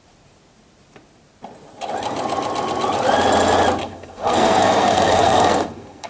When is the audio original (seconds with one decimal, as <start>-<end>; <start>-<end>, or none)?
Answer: 0.0-3.8

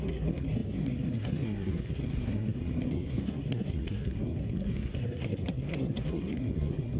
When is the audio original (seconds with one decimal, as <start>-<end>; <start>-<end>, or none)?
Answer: none